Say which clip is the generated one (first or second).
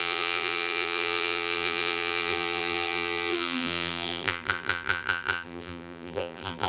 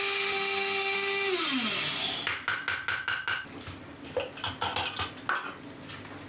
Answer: first